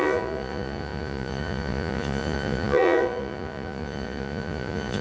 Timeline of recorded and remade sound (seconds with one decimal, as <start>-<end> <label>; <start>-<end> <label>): 0.0-5.0 remade